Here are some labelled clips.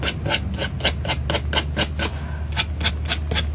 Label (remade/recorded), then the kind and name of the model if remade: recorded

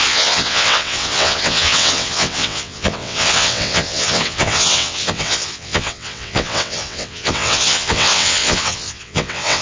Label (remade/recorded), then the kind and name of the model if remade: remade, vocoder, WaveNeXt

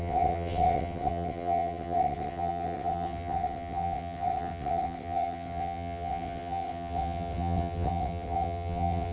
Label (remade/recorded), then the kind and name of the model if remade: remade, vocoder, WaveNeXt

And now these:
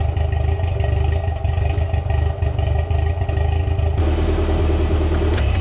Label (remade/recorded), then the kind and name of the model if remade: recorded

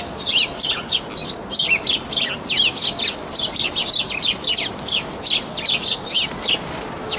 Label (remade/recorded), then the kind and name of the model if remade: recorded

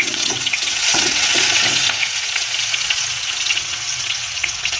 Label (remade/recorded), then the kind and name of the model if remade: remade, vocoder, WaveNeXt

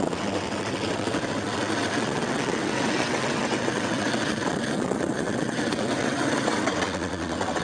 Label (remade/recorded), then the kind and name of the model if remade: remade, vocoder, WaveNeXt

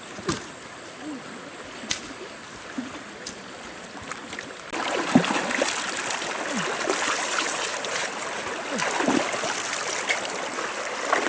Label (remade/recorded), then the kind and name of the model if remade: recorded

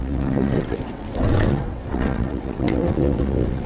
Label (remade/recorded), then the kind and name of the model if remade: remade, vocoder, WaveNeXt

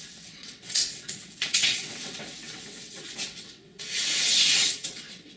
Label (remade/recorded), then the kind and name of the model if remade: remade, vocoder, WaveNeXt